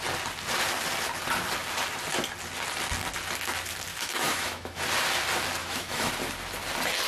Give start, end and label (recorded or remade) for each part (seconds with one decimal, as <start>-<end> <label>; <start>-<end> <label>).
0.0-3.9 recorded; 3.9-4.8 remade; 4.8-5.6 recorded; 5.6-6.1 remade; 6.1-7.1 recorded